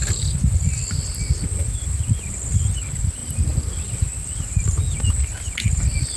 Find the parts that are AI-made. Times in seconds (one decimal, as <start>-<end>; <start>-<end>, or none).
none